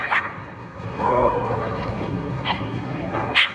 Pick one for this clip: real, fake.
fake